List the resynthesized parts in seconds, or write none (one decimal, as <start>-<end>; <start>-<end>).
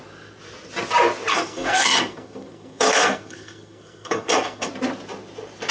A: 1.3-4.7